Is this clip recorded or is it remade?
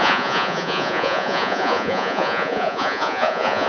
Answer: remade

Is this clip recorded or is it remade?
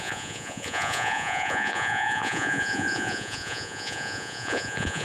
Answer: remade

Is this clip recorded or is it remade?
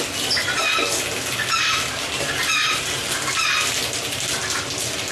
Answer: recorded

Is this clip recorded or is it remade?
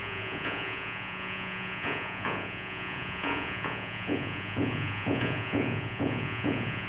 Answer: remade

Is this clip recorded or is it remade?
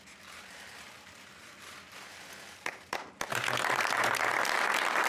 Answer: recorded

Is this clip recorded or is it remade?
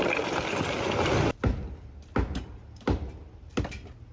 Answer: recorded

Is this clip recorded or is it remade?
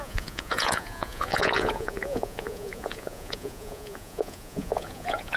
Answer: remade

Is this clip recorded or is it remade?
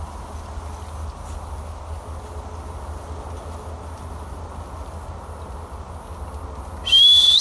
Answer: recorded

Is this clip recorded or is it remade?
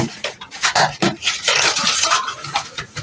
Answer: remade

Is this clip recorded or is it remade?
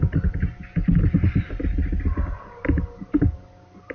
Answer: recorded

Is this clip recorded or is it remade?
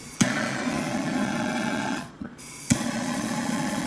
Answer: remade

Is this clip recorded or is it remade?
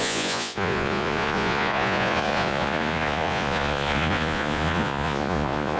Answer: remade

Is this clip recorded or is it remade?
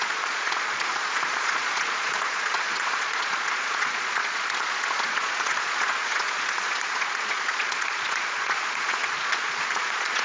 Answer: remade